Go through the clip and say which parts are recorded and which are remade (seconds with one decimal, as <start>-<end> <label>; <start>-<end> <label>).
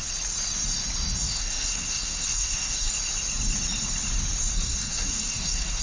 0.0-1.2 recorded; 1.2-2.9 remade; 2.9-4.5 recorded; 4.5-5.8 remade